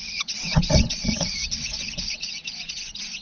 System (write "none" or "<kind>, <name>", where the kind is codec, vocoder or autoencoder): vocoder, WaveNeXt